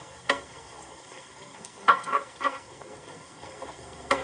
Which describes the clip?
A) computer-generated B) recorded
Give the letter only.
A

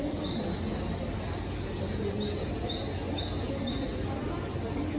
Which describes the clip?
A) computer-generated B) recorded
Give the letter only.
B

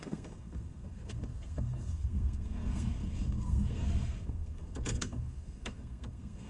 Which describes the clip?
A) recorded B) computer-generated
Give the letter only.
B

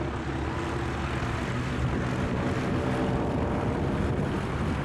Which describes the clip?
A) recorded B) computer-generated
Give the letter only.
A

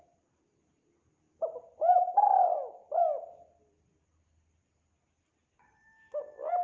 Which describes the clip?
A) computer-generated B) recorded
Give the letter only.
B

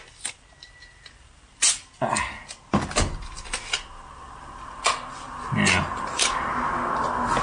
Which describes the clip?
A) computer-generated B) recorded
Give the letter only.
B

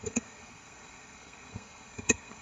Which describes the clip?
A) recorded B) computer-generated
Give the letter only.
B